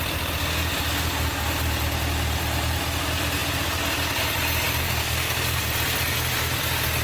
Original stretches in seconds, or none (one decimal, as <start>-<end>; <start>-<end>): 0.0-4.8; 5.6-7.0

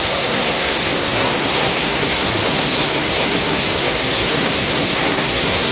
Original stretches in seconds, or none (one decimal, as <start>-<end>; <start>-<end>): none

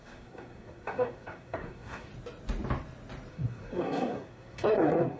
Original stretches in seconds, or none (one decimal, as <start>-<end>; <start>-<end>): 2.1-3.3

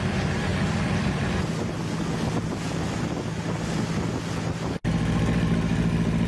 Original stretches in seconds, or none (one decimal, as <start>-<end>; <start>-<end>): 0.0-6.3

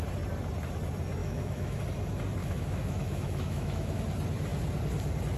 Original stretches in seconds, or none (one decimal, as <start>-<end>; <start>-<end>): 0.0-1.2; 1.8-2.4; 4.0-5.4

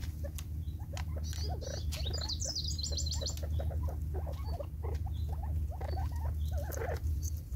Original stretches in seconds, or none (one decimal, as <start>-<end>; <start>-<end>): 0.0-6.8

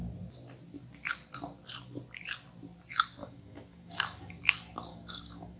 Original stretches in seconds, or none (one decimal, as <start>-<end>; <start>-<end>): 0.0-3.2; 4.4-4.9